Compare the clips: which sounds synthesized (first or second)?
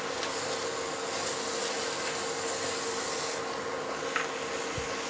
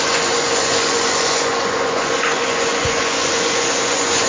second